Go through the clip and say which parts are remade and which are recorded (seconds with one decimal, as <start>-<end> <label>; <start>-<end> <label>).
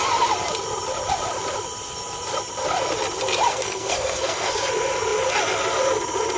0.0-3.5 recorded; 3.5-4.5 remade; 4.5-6.4 recorded